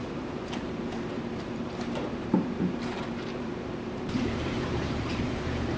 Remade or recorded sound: remade